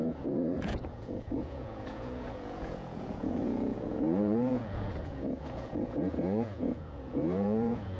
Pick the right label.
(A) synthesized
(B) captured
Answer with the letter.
A